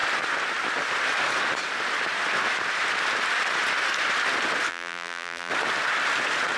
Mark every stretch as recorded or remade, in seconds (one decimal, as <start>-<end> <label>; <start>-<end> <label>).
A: 0.0-4.7 recorded; 4.7-5.5 remade; 5.5-6.6 recorded